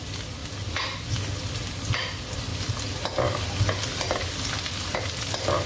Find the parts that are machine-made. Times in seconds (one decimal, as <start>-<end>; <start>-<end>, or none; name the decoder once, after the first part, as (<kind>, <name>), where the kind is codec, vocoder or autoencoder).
none